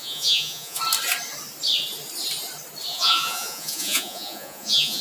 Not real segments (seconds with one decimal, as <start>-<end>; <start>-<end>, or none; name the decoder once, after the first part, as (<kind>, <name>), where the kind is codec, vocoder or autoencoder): 0.0-0.8 (vocoder, Vocos); 2.9-5.0